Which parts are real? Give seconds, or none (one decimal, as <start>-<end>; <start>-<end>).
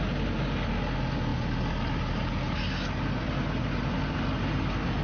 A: 0.0-5.0